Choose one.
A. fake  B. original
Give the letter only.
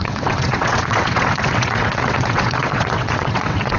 A